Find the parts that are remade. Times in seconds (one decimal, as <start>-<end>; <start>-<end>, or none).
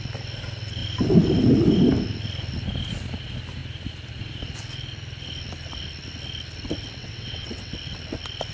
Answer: 7.0-7.7